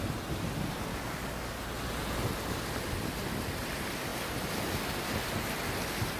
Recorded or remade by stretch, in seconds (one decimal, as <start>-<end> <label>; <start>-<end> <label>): 0.0-0.9 recorded; 0.9-1.6 remade; 1.6-6.2 recorded